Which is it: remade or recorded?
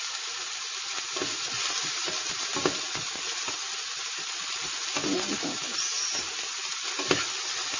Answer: recorded